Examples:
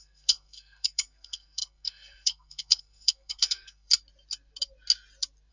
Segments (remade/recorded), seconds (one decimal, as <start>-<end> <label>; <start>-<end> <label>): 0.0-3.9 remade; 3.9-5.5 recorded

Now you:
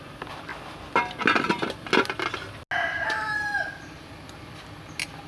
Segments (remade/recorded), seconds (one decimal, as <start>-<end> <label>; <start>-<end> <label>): 0.0-5.3 recorded

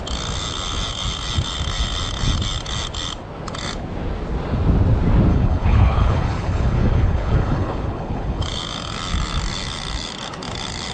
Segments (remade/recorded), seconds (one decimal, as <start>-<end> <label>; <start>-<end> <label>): 0.0-5.3 recorded; 5.3-8.5 remade; 8.5-10.9 recorded